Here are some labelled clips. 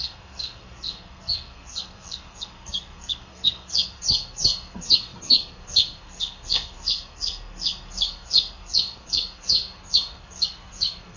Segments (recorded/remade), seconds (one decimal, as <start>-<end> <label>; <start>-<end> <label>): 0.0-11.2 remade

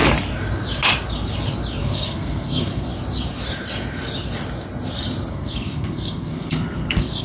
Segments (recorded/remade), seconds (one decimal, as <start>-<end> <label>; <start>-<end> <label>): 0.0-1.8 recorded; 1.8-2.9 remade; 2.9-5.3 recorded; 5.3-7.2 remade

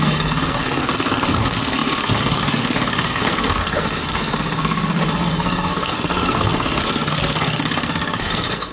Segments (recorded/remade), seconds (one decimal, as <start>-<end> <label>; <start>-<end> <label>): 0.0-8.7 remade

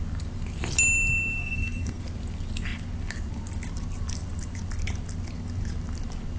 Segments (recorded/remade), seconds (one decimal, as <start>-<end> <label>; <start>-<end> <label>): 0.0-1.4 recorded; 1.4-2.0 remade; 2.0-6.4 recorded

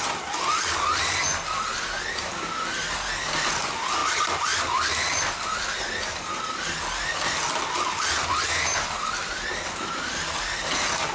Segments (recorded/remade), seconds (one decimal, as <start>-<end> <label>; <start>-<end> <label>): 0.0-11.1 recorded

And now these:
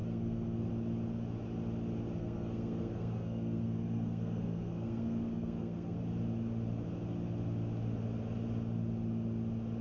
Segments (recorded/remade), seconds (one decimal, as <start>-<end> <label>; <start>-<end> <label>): 0.0-0.7 remade; 0.7-2.2 recorded; 2.2-6.0 remade; 6.0-9.8 recorded

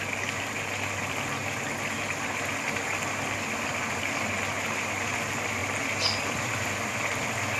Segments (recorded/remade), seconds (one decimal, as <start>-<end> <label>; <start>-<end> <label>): 0.0-7.6 recorded

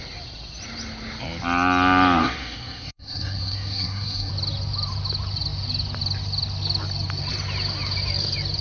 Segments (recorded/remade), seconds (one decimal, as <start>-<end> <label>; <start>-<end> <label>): 0.0-2.2 recorded; 2.2-4.3 remade; 4.3-8.6 recorded